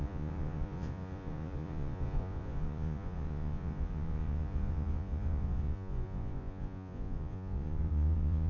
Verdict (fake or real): fake